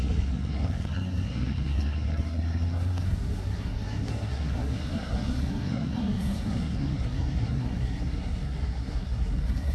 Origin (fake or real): fake